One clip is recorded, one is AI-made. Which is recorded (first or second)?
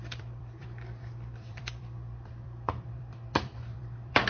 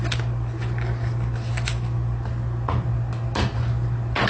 second